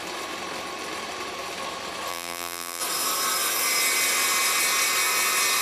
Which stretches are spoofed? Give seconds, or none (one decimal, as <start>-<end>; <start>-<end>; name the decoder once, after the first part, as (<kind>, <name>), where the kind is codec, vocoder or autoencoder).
2.1-2.8 (vocoder, BigVGAN v2)